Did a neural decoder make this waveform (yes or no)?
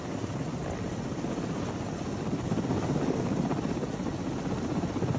no